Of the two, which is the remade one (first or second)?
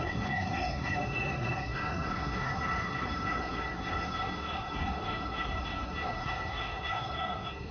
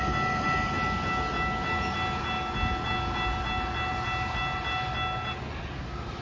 first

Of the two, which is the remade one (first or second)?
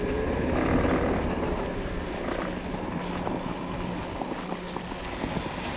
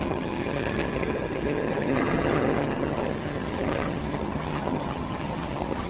second